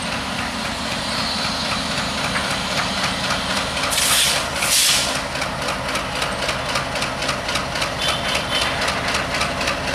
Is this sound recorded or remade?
recorded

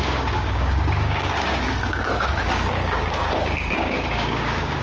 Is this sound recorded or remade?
remade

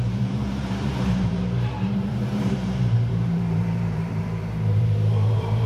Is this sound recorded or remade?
remade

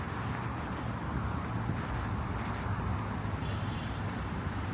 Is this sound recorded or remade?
recorded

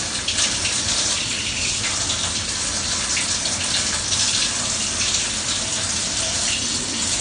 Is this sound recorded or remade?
recorded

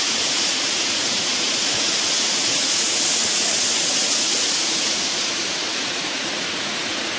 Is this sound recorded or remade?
remade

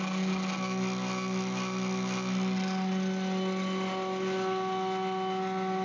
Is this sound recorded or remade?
recorded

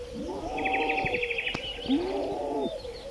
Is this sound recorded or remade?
recorded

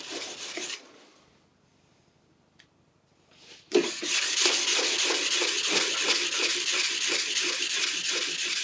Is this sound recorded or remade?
remade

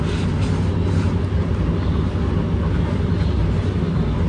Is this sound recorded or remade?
recorded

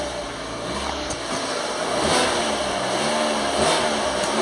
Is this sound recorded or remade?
recorded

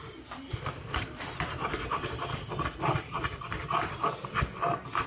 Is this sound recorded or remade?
recorded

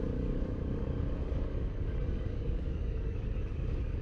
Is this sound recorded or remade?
remade